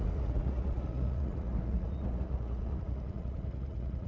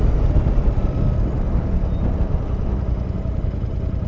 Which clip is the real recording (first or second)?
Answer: second